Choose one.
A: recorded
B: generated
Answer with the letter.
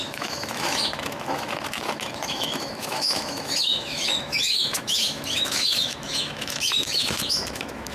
B